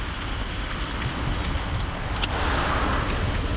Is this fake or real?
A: real